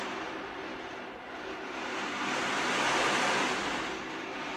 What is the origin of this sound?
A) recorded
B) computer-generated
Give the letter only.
A